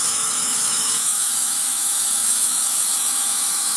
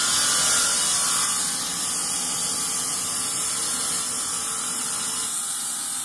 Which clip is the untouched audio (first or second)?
second